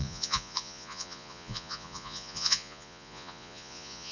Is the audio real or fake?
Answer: fake